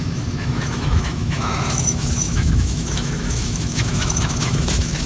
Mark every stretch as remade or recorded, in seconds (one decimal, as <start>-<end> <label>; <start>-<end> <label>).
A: 0.0-5.1 remade